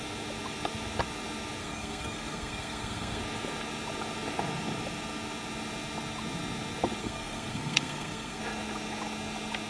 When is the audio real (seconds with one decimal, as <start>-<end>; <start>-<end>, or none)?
0.0-1.6; 3.2-7.0; 8.4-9.7